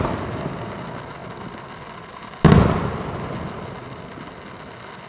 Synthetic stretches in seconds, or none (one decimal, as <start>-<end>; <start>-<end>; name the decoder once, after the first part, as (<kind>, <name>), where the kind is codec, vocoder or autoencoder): none